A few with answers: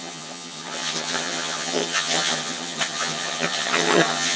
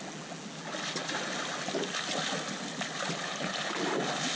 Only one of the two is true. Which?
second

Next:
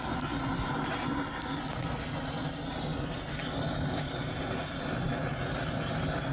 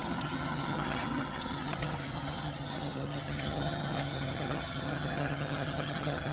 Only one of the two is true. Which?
first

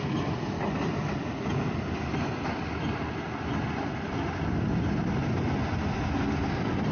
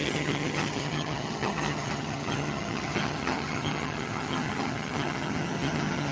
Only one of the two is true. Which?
first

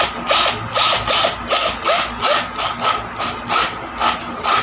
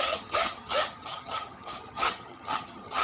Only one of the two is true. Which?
first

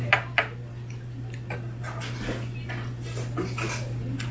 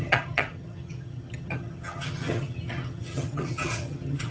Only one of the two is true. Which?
first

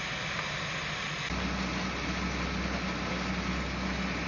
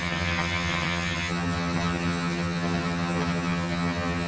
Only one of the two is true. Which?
first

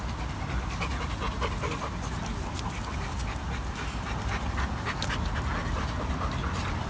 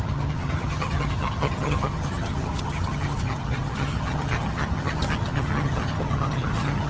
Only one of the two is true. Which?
first